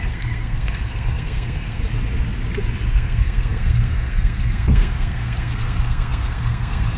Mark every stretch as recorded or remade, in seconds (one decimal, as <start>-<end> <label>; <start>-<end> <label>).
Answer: 0.0-1.8 remade; 1.8-2.9 recorded; 2.9-7.0 remade